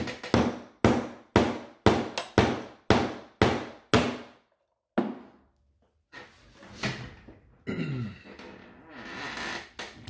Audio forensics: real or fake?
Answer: real